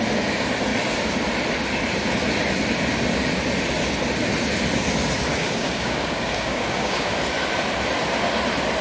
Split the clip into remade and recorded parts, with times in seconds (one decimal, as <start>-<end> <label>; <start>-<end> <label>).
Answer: 0.0-5.3 recorded; 5.3-7.1 remade; 7.1-8.8 recorded